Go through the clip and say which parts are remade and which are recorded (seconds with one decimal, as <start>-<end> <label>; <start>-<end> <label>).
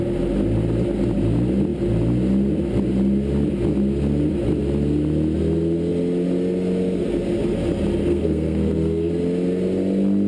0.0-8.1 recorded; 8.1-9.1 remade; 9.1-10.3 recorded